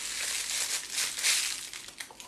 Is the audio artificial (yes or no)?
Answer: no